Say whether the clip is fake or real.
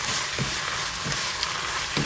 real